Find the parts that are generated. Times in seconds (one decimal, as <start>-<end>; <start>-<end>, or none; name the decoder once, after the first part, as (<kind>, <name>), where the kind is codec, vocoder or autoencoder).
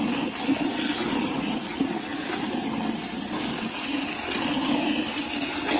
none